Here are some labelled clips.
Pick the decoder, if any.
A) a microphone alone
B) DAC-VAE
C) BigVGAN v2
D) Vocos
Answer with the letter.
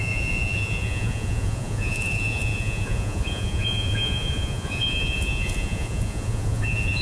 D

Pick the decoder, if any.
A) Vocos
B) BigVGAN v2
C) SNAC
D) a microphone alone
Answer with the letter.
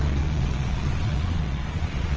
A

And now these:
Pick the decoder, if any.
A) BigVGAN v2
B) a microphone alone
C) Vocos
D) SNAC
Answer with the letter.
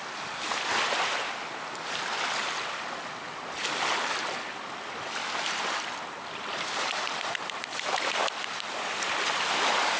B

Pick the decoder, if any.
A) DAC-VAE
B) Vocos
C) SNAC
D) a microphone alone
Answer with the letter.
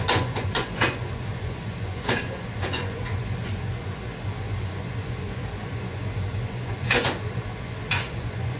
B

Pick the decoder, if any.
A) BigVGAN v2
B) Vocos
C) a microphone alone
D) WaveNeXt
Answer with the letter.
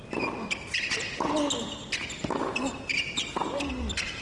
C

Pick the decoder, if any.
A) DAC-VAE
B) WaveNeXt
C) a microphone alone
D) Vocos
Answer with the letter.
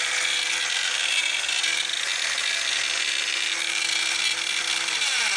C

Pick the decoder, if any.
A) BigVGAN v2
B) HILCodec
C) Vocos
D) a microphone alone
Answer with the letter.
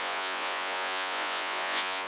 C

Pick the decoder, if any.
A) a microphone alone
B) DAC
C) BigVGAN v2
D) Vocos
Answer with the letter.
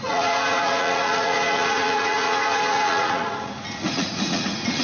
D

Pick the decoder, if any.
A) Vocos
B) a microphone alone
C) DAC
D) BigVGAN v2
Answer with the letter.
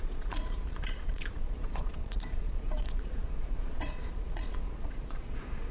A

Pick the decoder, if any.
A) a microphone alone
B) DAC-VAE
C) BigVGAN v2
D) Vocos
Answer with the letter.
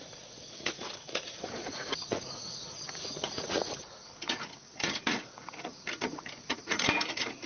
D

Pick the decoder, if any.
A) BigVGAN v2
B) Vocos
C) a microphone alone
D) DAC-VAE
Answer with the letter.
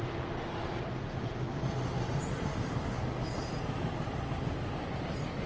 C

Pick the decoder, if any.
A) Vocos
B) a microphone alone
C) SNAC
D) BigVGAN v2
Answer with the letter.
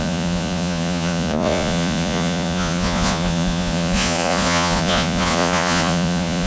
A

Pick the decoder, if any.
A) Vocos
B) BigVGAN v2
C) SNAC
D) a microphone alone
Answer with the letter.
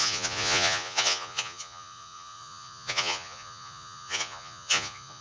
A